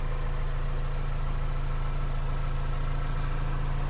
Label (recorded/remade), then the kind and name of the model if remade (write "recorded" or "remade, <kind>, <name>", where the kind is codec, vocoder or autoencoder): recorded